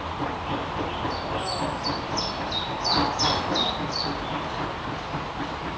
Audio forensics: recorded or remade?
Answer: recorded